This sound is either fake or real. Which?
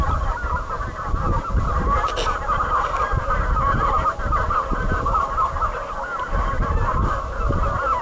real